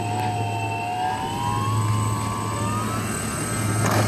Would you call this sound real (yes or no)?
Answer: yes